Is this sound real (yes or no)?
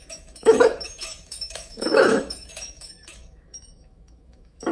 no